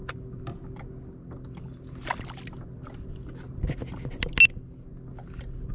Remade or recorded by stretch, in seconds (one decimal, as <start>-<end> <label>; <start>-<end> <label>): 0.0-5.7 recorded